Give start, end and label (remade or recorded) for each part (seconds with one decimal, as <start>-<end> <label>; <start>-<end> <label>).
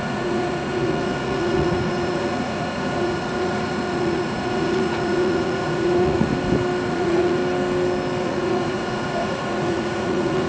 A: 0.0-6.3 remade; 6.3-6.9 recorded; 6.9-7.4 remade; 7.4-8.2 recorded; 8.2-10.5 remade